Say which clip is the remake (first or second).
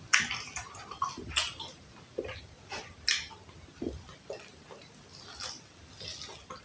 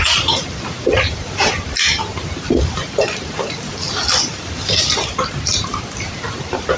second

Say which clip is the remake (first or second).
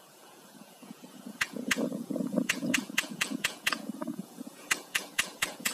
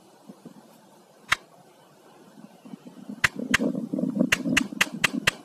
first